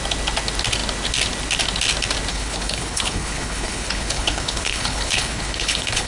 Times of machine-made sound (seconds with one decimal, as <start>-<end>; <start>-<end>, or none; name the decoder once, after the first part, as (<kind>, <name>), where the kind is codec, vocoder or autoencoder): 2.3-6.1 (codec, HILCodec)